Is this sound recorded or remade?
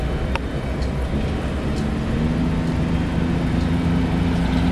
recorded